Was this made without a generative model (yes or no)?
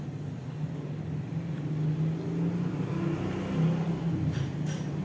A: yes